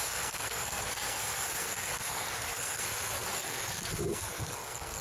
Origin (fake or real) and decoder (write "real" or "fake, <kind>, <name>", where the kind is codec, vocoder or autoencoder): fake, codec, SNAC